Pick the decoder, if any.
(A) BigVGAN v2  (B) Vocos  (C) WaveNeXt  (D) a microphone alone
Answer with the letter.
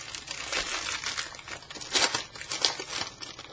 D